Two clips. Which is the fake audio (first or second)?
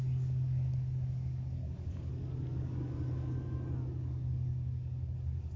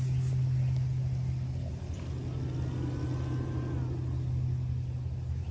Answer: first